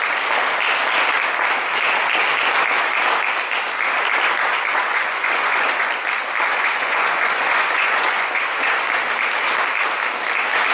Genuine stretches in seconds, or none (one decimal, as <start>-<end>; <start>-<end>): 0.0-4.7; 5.9-6.5; 8.8-10.7